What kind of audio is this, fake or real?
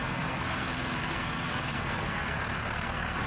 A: fake